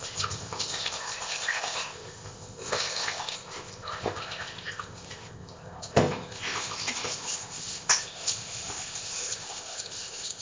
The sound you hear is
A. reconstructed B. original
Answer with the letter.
A